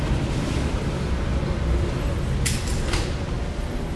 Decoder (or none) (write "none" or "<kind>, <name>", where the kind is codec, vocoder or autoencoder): none